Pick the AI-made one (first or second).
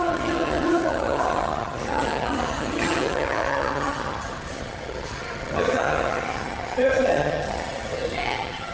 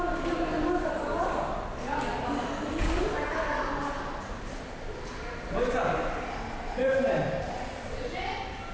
first